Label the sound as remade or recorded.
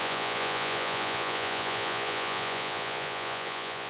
remade